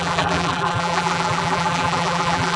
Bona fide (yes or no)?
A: no